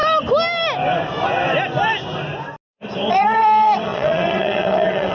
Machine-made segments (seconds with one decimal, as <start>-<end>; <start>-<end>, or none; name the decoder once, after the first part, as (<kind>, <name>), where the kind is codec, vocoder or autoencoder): 3.1-5.1 (vocoder, WaveNeXt)